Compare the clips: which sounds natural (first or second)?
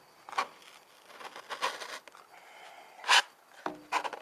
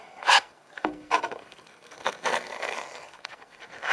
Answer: first